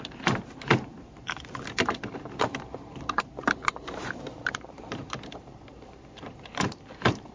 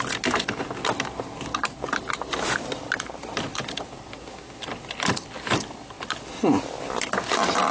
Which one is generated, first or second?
first